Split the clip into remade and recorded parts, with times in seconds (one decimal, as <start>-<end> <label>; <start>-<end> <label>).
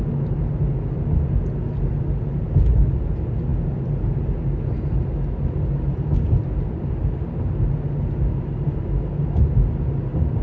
0.0-10.4 recorded